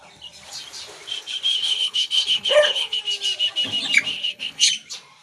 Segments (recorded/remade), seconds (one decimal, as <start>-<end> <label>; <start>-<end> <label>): 0.0-1.5 recorded; 1.5-3.0 remade; 3.0-4.1 recorded; 4.1-4.7 remade; 4.7-5.2 recorded